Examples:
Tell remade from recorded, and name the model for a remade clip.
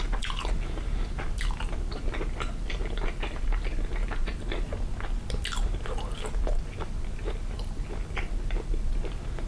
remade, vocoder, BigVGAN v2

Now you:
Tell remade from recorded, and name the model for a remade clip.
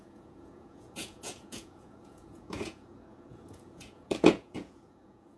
remade, vocoder, Vocos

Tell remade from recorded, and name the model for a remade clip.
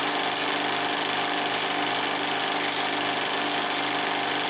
recorded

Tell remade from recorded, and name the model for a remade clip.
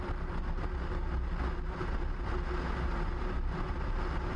recorded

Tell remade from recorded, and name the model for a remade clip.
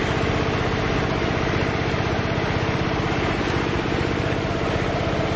recorded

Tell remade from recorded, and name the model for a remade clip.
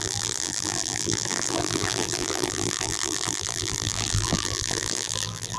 remade, vocoder, BigVGAN v2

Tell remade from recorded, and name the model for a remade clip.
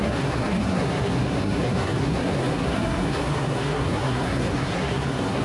remade, codec, SNAC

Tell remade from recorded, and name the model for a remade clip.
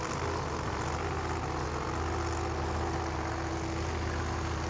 recorded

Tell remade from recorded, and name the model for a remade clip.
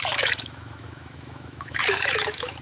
remade, autoencoder, DAC-VAE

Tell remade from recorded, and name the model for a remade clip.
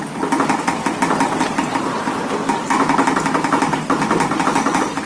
recorded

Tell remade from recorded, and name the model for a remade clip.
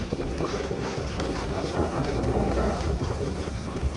remade, codec, SNAC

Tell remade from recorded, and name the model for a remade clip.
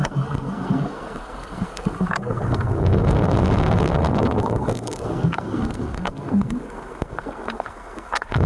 remade, codec, SNAC